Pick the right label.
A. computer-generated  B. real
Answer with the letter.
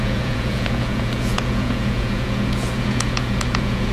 A